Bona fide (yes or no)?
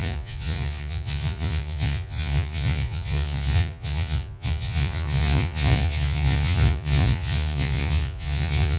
no